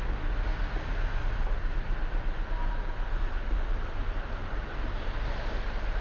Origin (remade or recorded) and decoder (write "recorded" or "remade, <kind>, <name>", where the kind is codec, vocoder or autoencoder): recorded